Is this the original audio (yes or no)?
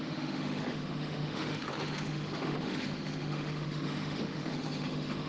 no